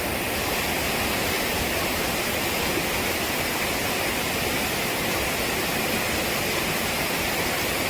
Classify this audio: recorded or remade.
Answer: recorded